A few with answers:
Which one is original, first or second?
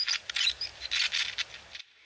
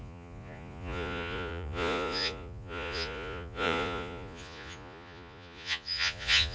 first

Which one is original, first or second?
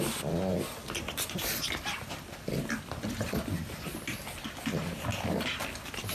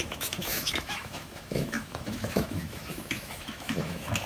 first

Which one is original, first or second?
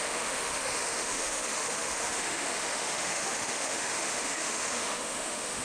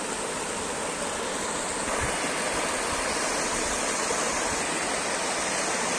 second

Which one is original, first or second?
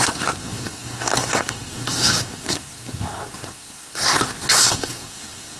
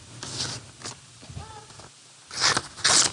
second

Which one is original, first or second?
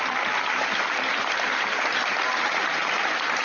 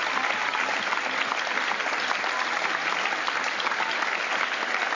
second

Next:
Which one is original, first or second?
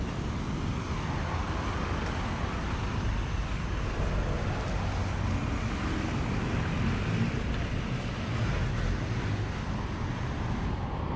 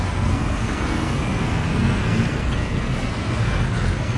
first